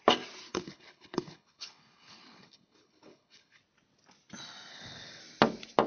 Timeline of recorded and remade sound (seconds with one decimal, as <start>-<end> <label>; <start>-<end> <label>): 0.0-0.5 recorded; 0.5-3.6 remade; 3.6-4.7 recorded; 4.7-5.2 remade; 5.2-5.9 recorded